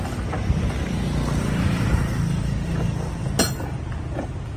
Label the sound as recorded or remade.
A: recorded